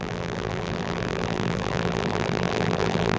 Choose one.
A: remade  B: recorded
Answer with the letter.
A